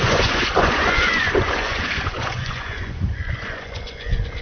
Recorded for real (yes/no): no